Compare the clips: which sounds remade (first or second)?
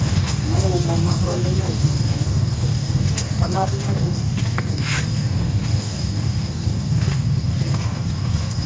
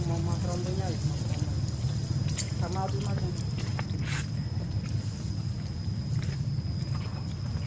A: first